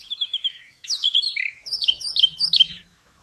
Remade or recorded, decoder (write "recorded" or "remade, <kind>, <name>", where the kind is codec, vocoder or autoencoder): remade, autoencoder, DAC-VAE